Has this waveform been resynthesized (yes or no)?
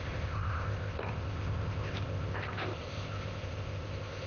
yes